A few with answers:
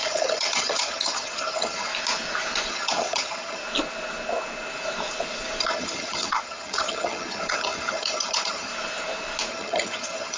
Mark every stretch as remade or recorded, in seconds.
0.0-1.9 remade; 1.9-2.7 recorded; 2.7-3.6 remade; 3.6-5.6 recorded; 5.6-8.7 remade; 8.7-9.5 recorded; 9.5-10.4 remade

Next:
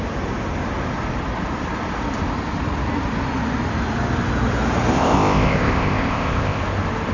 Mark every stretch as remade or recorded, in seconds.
0.0-4.9 recorded; 4.9-6.6 remade; 6.6-7.1 recorded

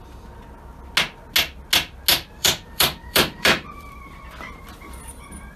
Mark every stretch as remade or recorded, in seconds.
0.0-2.1 recorded; 2.1-4.1 remade; 4.1-5.6 recorded